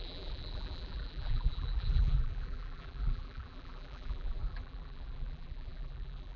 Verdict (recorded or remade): remade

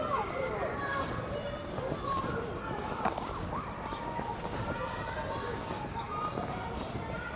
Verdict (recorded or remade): recorded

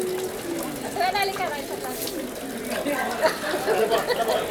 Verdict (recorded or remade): recorded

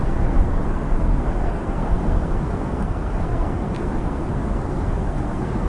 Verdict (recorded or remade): remade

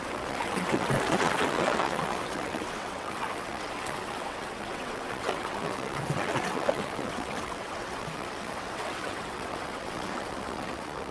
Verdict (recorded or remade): remade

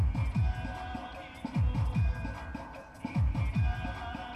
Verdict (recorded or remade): recorded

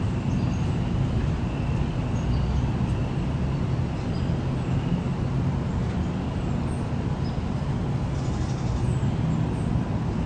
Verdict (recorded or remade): recorded